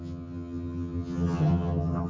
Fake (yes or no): yes